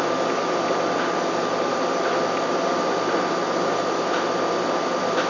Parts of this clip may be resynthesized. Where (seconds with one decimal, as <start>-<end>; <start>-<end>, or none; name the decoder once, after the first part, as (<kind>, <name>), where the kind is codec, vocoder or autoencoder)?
none